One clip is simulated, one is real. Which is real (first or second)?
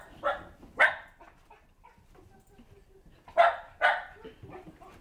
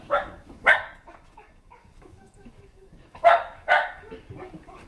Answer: first